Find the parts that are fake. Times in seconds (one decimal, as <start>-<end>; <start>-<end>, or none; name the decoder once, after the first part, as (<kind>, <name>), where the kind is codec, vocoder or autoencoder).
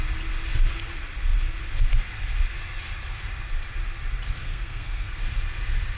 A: 4.4-5.2 (codec, SNAC)